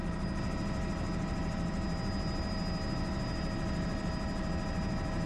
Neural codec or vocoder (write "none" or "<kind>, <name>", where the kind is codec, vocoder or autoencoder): none